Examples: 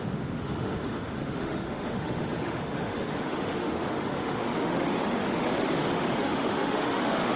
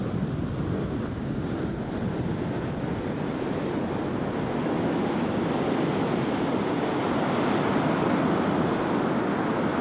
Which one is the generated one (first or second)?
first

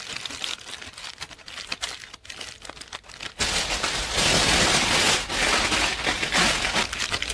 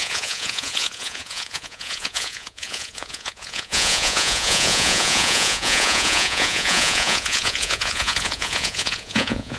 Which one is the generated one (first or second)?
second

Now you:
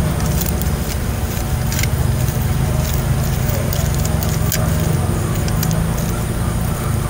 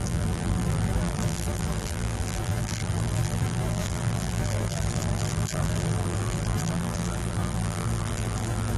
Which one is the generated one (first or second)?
second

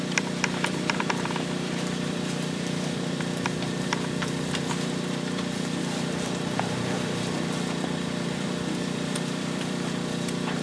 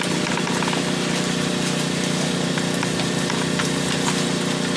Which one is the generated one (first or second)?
first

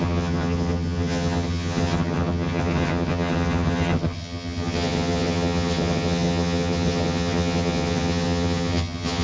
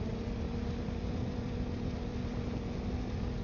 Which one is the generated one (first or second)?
first